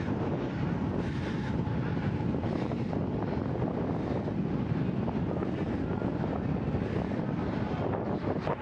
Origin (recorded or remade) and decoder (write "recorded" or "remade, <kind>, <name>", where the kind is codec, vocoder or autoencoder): recorded